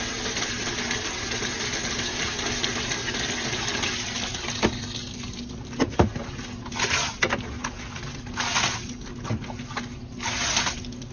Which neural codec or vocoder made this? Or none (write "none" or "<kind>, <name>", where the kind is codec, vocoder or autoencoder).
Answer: none